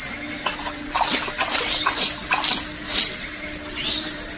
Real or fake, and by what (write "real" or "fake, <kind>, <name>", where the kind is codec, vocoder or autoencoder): real